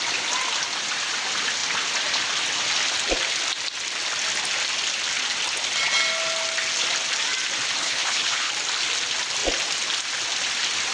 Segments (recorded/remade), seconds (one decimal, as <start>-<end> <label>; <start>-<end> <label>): 0.0-7.8 recorded; 7.8-8.5 remade; 8.5-10.9 recorded